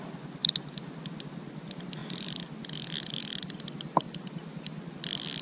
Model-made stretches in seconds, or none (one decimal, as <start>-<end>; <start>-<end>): none